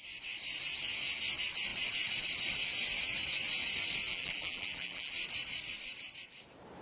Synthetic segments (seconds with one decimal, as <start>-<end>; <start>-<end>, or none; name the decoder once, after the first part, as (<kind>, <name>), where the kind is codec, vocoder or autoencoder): 4.1-5.1 (vocoder, BigVGAN v2)